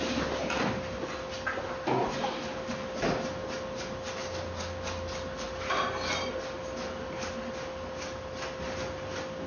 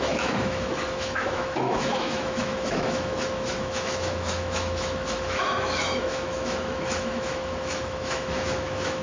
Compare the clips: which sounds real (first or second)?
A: first